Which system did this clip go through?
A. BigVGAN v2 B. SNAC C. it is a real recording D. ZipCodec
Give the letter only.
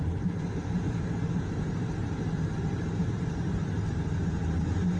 A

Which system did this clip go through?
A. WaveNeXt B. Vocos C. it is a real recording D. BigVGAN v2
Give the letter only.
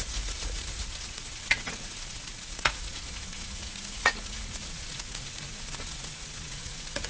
B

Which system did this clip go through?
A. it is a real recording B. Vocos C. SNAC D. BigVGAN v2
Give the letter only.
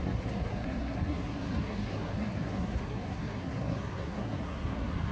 C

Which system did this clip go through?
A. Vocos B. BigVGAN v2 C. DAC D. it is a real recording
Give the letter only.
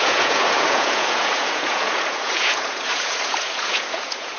A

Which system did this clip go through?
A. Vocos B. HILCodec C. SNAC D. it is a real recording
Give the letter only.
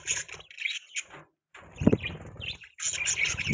D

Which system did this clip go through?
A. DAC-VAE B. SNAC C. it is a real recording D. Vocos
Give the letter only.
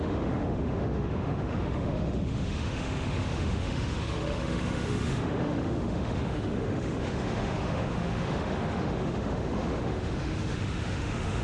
A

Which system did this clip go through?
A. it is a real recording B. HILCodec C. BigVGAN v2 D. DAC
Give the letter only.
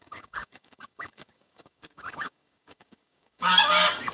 D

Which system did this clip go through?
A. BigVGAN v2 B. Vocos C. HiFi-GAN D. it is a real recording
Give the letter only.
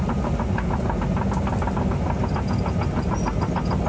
D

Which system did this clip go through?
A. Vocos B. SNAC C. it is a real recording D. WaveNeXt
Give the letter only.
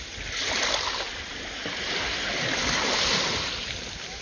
C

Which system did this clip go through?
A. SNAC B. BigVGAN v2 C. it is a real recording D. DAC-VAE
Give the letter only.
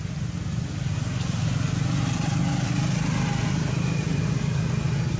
C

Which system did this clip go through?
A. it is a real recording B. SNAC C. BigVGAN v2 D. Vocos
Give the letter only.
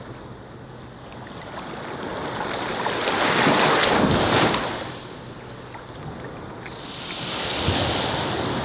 A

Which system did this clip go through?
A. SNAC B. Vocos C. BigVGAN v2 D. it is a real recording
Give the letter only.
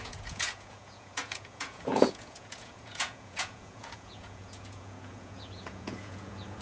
B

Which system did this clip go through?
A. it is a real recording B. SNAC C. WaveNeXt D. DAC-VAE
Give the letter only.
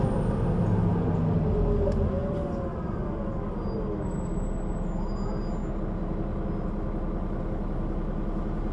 A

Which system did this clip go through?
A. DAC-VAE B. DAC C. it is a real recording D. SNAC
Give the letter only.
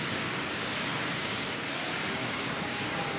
B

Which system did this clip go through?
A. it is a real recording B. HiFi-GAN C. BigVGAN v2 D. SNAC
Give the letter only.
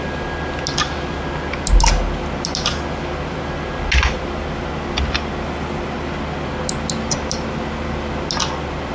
A